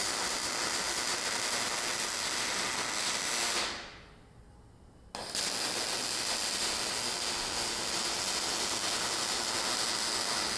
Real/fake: real